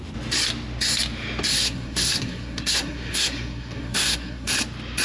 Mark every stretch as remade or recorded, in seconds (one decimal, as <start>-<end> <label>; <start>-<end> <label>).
0.0-1.5 recorded; 1.5-4.5 remade; 4.5-5.0 recorded